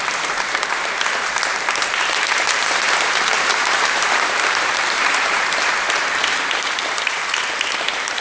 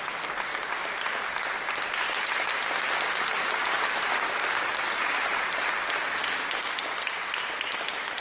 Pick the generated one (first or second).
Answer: first